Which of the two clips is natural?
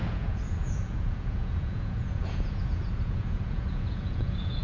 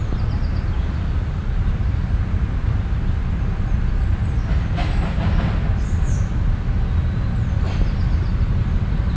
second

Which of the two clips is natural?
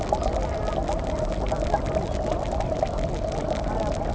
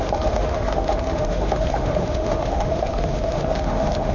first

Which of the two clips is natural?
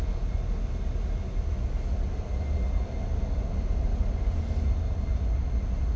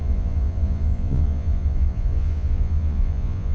first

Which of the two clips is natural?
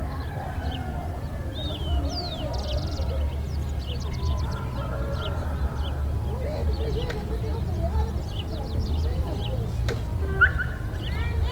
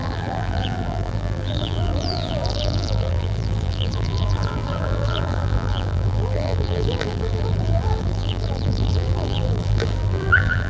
first